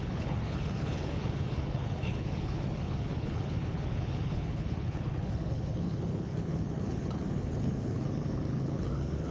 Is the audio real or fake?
fake